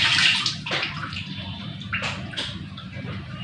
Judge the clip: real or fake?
fake